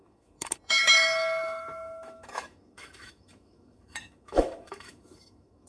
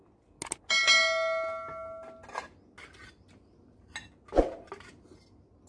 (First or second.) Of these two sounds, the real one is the second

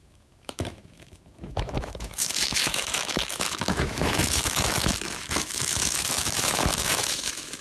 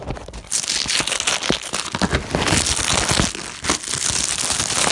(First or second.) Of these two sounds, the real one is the second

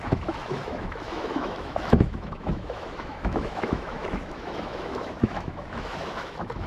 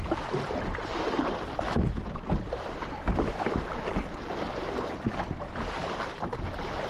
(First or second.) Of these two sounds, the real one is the second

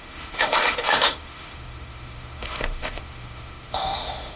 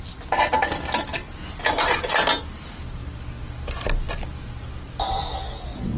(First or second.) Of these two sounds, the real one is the second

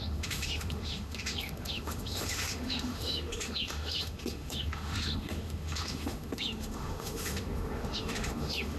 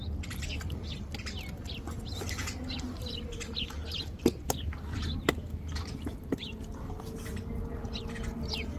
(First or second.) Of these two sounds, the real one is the second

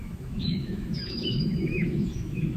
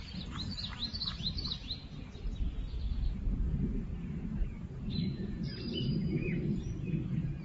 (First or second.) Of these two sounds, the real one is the second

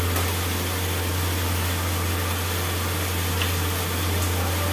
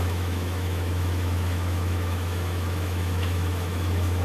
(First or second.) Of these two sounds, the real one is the first